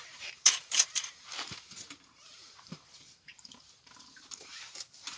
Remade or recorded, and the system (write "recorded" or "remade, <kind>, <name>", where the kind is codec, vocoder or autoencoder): remade, vocoder, BigVGAN v2